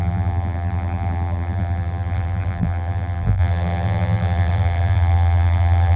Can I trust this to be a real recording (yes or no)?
no